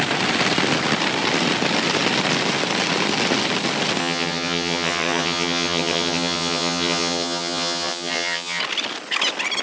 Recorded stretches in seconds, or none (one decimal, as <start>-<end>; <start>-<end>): 0.0-4.0; 8.6-9.6

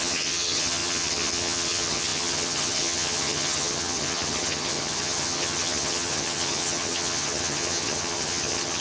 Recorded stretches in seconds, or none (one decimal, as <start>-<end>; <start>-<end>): none

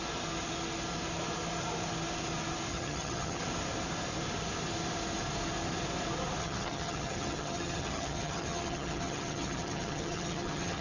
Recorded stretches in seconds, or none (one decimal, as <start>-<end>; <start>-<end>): 0.0-2.7; 3.4-6.4

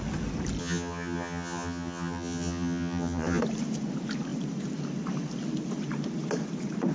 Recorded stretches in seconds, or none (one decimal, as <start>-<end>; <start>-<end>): 0.0-0.6; 3.4-6.9

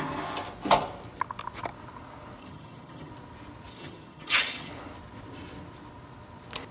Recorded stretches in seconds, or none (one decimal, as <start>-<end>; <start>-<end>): 0.0-2.4; 3.1-3.7; 4.7-6.7